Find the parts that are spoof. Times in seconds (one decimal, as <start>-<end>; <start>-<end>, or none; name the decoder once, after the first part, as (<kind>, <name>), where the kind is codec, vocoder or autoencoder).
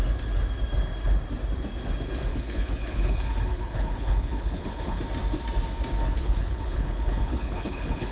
2.3-5.0 (codec, HILCodec); 6.2-8.1